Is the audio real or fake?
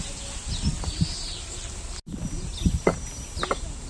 real